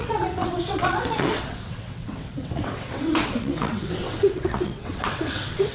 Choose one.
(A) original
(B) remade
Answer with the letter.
B